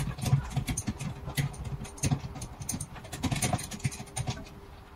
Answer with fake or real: real